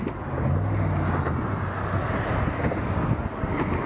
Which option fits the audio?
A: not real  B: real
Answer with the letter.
B